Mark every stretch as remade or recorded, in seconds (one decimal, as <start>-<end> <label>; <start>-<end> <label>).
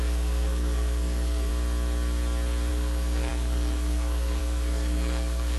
0.0-1.5 remade; 1.5-2.7 recorded; 2.7-5.6 remade